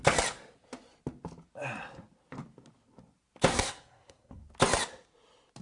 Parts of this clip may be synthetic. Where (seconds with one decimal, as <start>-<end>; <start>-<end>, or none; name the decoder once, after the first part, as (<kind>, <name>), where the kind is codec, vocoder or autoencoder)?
3.5-4.4 (codec, SNAC)